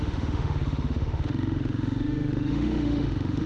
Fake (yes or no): yes